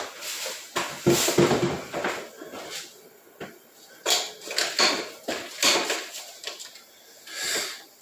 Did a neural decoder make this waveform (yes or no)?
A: no